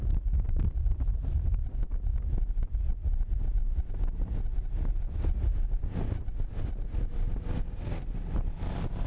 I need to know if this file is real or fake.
real